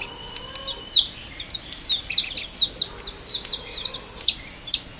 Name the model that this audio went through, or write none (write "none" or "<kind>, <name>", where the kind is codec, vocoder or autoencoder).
none